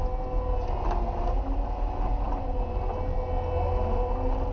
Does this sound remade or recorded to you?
recorded